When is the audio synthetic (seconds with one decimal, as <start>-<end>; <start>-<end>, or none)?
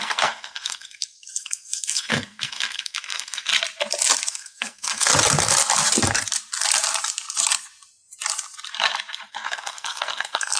0.0-3.5; 4.3-5.1; 9.3-10.6